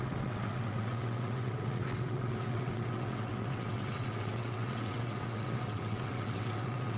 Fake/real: fake